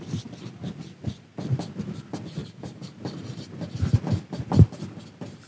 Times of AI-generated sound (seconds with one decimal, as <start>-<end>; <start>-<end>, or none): 2.4-2.9